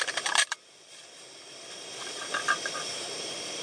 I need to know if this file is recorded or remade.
recorded